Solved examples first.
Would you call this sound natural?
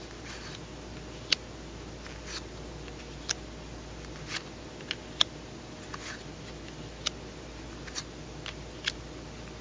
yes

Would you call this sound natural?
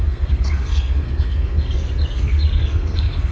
no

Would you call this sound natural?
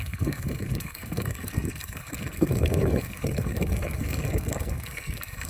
no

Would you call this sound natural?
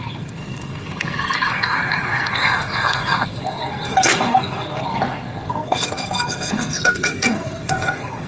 no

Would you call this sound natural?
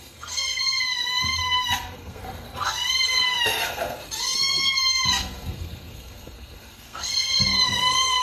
no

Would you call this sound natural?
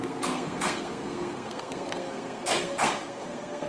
no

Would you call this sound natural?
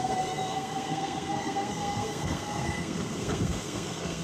no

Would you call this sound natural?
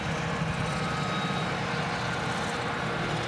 yes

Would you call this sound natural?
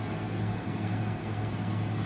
no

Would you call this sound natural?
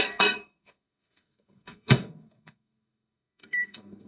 no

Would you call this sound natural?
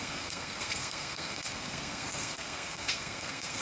no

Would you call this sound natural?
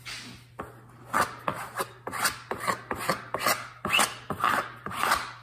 yes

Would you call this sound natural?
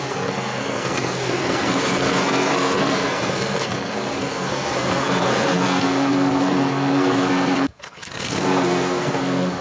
no